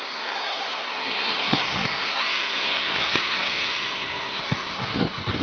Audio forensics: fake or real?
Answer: fake